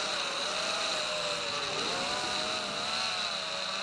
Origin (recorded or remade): recorded